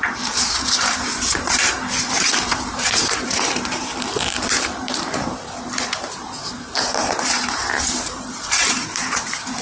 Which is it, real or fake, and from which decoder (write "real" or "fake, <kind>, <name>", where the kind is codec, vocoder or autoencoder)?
fake, vocoder, BigVGAN v2